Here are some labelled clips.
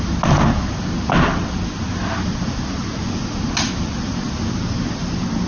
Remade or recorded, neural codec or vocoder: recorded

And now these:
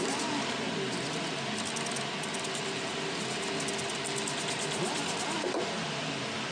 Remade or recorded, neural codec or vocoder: recorded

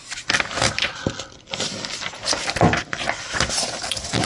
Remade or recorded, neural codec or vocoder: recorded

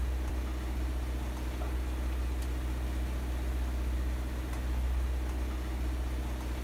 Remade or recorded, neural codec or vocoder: recorded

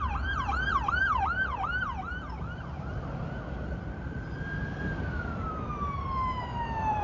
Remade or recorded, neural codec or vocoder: remade, vocoder, BigVGAN v2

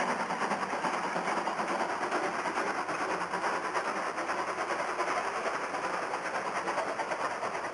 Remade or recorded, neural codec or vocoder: recorded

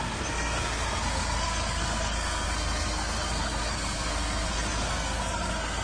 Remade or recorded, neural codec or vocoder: remade, codec, SNAC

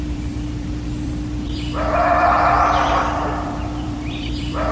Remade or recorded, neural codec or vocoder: remade, vocoder, BigVGAN v2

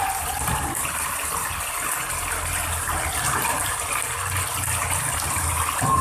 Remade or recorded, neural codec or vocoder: remade, vocoder, BigVGAN v2